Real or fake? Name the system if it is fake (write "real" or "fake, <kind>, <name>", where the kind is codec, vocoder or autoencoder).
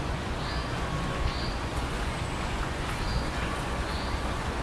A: fake, vocoder, Vocos